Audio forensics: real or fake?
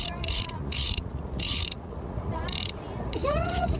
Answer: fake